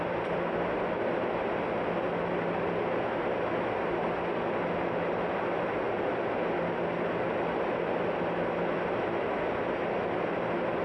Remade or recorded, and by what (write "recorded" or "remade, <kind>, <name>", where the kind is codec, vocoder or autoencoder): recorded